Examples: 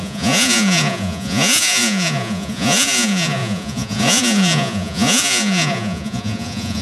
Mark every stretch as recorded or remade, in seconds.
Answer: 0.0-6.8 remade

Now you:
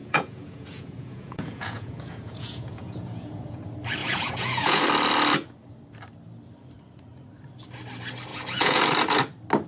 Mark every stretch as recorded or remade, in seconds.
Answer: 0.0-3.6 remade; 3.6-4.0 recorded; 4.0-4.8 remade; 4.8-8.3 recorded; 8.3-8.8 remade; 8.8-9.7 recorded

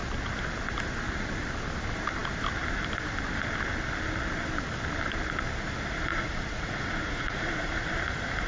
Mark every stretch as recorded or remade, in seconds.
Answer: 0.0-6.1 recorded; 6.1-7.9 remade; 7.9-8.5 recorded

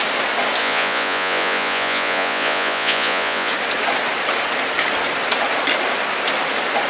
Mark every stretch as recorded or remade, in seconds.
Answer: 0.0-0.6 recorded; 0.6-3.5 remade; 3.5-6.9 recorded

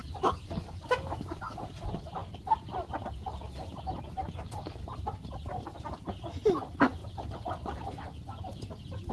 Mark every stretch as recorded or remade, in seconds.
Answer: 0.0-9.1 recorded